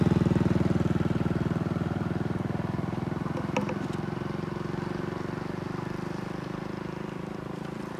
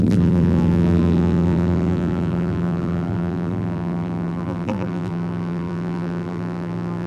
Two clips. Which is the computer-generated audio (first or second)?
second